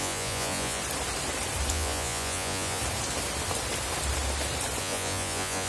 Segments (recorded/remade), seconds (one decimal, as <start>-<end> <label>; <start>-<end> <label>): 0.0-0.8 remade; 0.8-1.7 recorded; 1.7-2.8 remade; 2.8-4.8 recorded; 4.8-5.7 remade